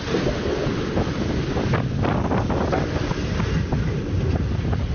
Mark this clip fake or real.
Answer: real